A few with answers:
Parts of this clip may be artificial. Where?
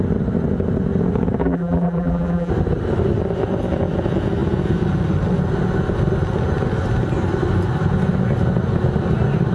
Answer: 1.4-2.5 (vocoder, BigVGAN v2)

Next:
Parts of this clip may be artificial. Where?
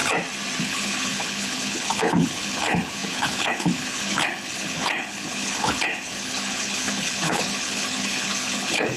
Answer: 0.6-9.0 (codec, HILCodec)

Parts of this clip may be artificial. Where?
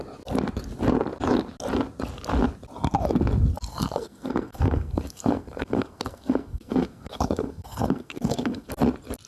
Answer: 3.7-8.7 (codec, SNAC)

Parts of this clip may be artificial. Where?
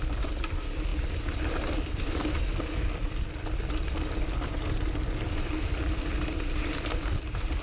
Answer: none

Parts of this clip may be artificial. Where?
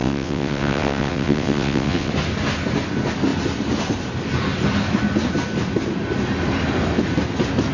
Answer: 0.0-2.1 (vocoder, WaveNeXt)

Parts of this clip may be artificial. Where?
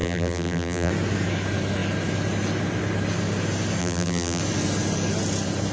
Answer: 0.0-0.9 (vocoder, BigVGAN v2); 3.8-4.4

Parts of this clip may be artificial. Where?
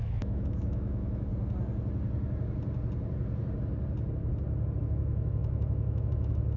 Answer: 0.0-1.3 (autoencoder, DAC-VAE); 4.8-6.6